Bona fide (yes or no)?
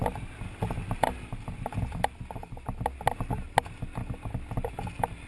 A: yes